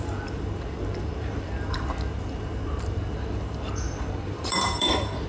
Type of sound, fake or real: fake